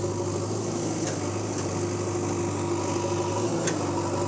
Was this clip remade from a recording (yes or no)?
no